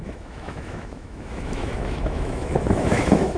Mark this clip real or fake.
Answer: fake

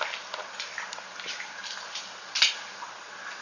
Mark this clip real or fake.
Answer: fake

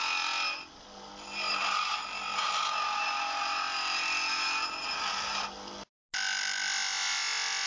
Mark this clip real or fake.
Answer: real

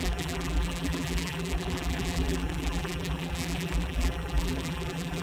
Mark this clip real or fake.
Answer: fake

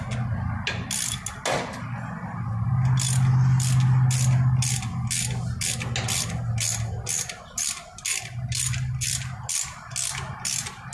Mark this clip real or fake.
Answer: real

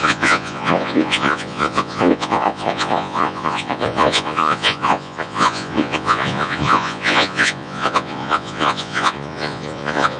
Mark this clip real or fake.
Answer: fake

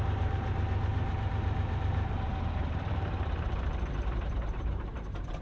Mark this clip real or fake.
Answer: fake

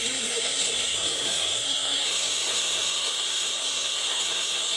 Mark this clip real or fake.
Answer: fake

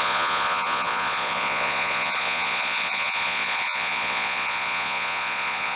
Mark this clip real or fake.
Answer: fake